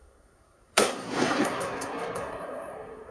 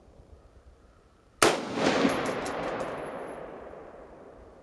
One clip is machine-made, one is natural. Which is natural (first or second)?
second